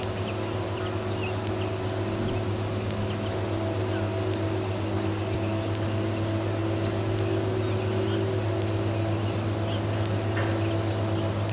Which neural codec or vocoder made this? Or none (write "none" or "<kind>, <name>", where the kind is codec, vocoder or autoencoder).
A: none